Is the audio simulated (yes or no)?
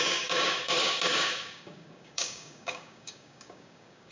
yes